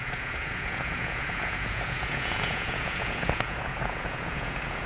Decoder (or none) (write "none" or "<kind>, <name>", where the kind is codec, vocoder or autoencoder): vocoder, Vocos